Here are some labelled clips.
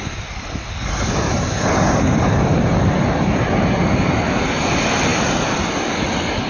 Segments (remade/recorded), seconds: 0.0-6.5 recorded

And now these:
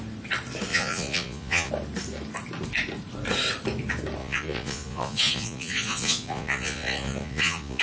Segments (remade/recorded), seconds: 0.0-0.7 recorded; 0.7-1.7 remade; 1.7-4.2 recorded; 4.2-7.8 remade

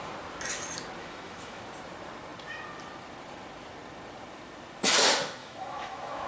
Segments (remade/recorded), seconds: 0.0-1.0 recorded; 1.0-1.6 remade; 1.6-5.4 recorded; 5.4-6.3 remade